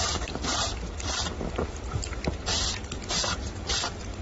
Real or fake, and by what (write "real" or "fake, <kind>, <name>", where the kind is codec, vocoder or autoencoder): fake, vocoder, BigVGAN v2